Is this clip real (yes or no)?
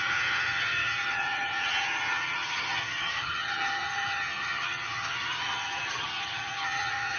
no